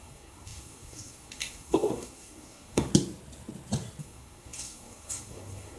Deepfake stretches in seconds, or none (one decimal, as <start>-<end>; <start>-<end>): 0.0-2.9; 4.0-5.8